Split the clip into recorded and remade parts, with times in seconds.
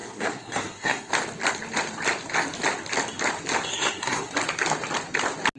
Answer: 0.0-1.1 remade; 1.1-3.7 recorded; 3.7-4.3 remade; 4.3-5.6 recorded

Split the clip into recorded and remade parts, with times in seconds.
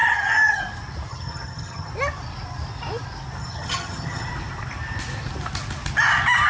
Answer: 0.0-0.6 remade; 0.6-1.1 recorded; 1.1-1.9 remade; 1.9-3.4 recorded; 3.4-4.3 remade; 4.3-6.5 recorded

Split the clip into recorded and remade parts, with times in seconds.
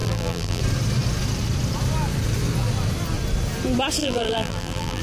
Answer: 0.0-0.6 remade; 0.6-4.0 recorded; 4.0-5.0 remade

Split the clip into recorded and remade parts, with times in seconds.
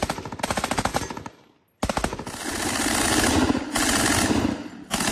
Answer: 0.0-5.1 recorded